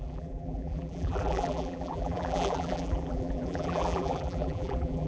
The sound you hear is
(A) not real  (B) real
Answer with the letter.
A